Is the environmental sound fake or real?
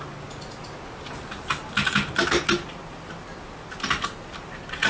real